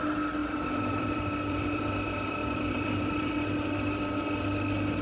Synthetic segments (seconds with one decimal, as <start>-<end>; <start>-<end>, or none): 0.4-1.9; 2.4-3.3